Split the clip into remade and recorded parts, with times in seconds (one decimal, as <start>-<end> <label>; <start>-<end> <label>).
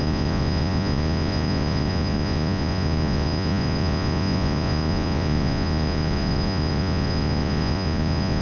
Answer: 0.0-8.4 remade